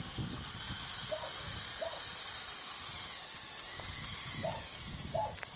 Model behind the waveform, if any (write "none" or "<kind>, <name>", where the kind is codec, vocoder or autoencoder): none